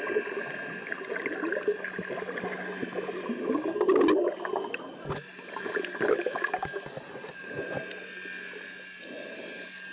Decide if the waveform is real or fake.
real